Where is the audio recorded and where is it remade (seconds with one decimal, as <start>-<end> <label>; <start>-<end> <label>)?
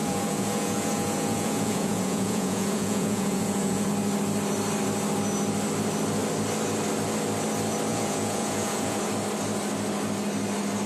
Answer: 0.0-3.9 remade; 3.9-7.9 recorded; 7.9-9.1 remade; 9.1-10.9 recorded